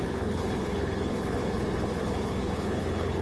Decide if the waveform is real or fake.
fake